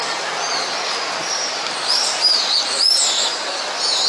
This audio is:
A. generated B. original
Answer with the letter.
B